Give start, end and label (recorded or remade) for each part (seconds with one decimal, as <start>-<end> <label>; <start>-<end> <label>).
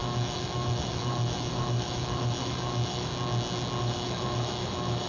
0.0-3.1 remade; 3.1-3.8 recorded; 3.8-5.1 remade